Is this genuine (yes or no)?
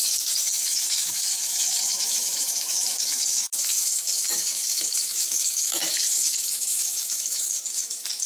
no